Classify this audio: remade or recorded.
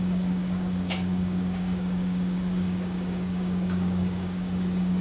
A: remade